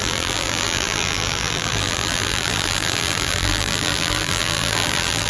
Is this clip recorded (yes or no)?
no